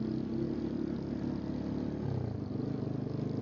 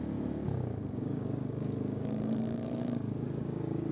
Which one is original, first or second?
first